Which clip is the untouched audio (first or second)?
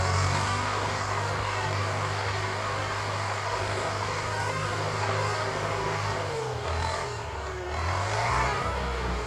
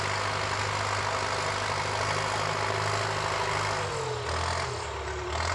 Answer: second